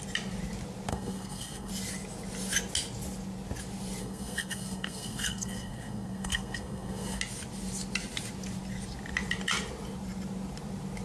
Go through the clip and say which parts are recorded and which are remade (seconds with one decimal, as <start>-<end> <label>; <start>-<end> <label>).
0.0-0.9 recorded; 0.9-1.7 remade; 1.7-4.0 recorded; 4.0-7.2 remade; 7.2-11.0 recorded